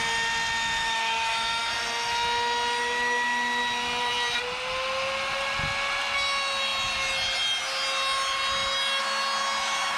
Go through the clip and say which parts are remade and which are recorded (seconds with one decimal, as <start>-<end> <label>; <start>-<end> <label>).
0.0-0.8 recorded; 0.8-1.7 remade; 1.7-10.0 recorded